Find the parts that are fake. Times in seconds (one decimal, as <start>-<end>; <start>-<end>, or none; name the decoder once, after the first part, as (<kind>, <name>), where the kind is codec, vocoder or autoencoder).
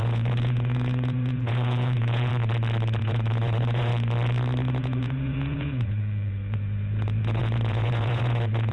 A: 0.0-2.3 (vocoder, Vocos); 3.0-3.9; 4.7-8.7